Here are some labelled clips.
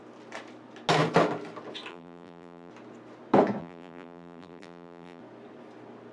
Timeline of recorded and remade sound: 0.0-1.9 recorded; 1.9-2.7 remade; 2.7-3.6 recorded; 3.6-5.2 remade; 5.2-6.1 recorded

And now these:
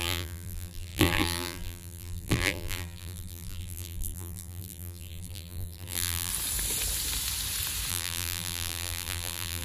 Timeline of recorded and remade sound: 0.0-6.3 remade; 6.3-7.9 recorded; 7.9-9.6 remade

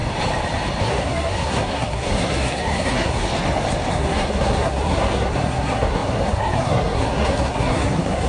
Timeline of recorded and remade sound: 0.0-0.8 recorded; 0.8-3.3 remade; 3.3-3.9 recorded; 3.9-8.3 remade

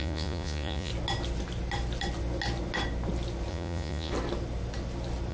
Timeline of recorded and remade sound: 0.0-0.9 remade; 0.9-3.5 recorded; 3.5-4.1 remade; 4.1-5.3 recorded

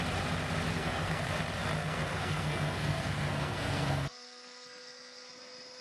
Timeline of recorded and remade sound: 0.0-0.7 recorded; 0.7-1.4 remade; 1.4-1.8 recorded; 1.8-5.3 remade; 5.3-5.8 recorded

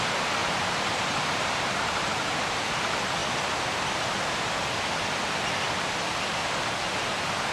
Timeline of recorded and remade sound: 0.0-0.4 recorded; 0.4-2.3 remade; 2.3-7.5 recorded

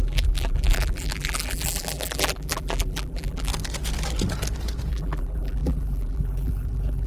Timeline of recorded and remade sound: 0.0-3.5 remade; 3.5-4.9 recorded; 4.9-7.1 remade

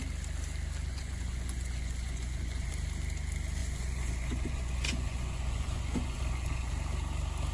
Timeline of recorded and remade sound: 0.0-0.9 recorded; 0.9-2.7 remade; 2.7-3.6 recorded; 3.6-6.7 remade; 6.7-7.5 recorded